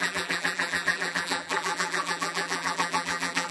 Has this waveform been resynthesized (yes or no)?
yes